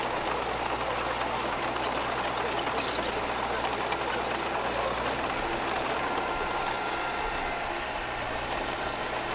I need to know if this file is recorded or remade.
recorded